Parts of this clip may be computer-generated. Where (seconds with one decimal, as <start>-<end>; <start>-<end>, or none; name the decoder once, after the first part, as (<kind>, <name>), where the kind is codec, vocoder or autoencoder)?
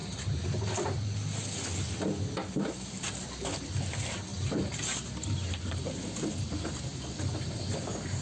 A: 0.0-0.5 (vocoder, BigVGAN v2); 4.3-6.6